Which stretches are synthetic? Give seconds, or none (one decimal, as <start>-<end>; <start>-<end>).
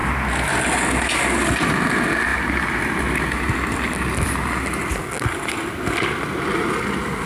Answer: none